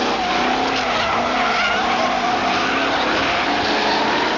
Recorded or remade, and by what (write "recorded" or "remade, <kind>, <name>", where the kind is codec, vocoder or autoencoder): recorded